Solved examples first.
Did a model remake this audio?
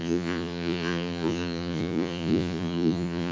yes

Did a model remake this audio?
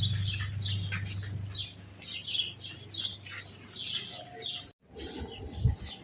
no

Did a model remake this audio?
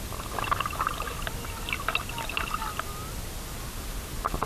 no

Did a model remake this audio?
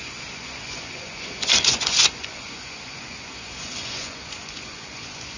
yes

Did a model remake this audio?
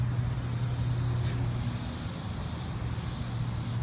no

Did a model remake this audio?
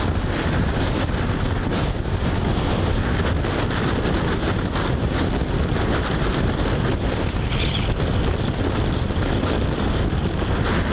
no